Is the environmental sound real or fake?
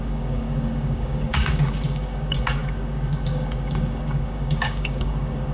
fake